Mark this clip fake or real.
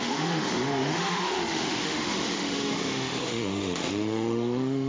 fake